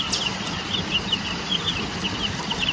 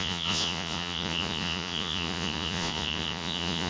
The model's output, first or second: second